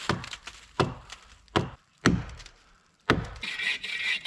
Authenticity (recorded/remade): recorded